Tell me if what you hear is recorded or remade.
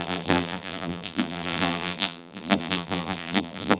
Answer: remade